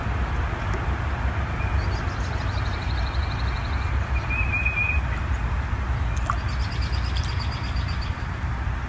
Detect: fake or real real